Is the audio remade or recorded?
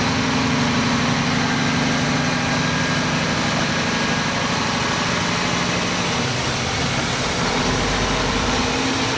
recorded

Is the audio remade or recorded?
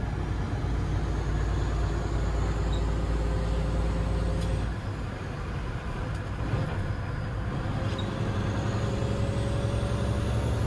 recorded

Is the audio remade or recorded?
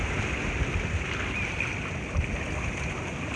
recorded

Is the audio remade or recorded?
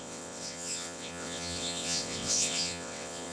remade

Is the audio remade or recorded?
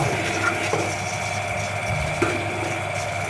recorded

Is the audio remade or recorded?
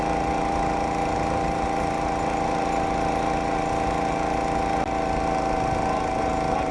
recorded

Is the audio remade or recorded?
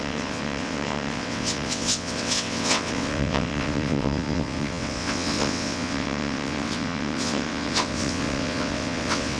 remade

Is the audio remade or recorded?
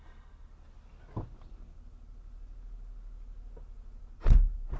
recorded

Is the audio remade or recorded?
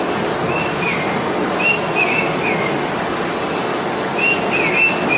recorded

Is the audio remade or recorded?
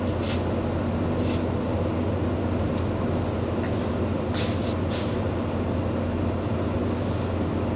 recorded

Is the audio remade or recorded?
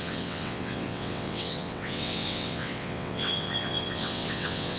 remade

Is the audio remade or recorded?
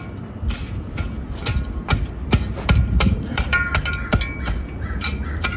recorded